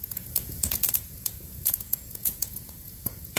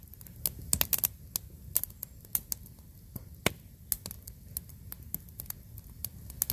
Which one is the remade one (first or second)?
first